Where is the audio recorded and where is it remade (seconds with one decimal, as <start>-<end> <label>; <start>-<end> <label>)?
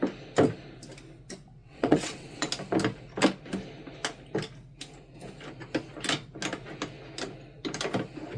0.0-1.6 recorded; 1.6-2.5 remade; 2.5-8.4 recorded